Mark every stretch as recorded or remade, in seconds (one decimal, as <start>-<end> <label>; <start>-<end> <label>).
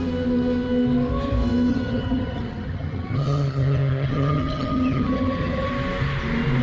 0.0-1.7 recorded; 1.7-5.7 remade; 5.7-6.6 recorded